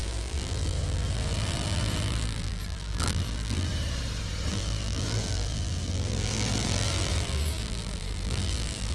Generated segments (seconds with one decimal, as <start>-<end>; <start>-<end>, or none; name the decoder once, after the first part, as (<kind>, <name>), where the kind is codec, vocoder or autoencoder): 0.0-3.7 (vocoder, BigVGAN v2); 4.5-8.9